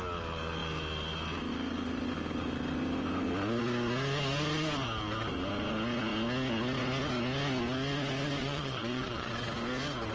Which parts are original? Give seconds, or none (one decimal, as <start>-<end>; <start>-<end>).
0.0-8.4; 9.3-10.1